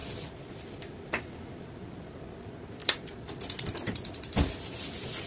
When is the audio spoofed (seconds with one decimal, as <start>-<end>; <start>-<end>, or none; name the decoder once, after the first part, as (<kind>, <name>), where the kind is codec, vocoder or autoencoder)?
2.8-4.8 (vocoder, BigVGAN v2)